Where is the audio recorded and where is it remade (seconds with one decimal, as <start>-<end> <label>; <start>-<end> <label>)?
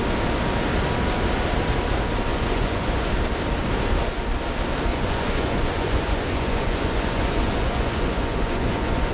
0.0-2.3 recorded; 2.3-3.1 remade; 3.1-4.9 recorded; 4.9-9.1 remade